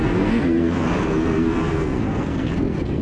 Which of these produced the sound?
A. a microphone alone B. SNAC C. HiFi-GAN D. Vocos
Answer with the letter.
B